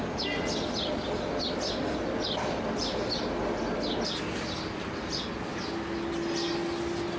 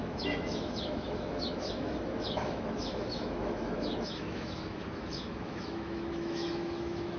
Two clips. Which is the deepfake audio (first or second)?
second